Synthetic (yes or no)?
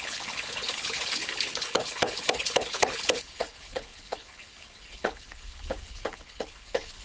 yes